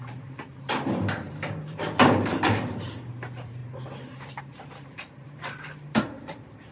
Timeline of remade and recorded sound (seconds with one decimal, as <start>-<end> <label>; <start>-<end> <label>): 0.0-6.7 remade